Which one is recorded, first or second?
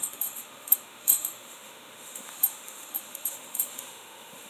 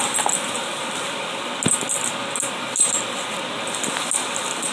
second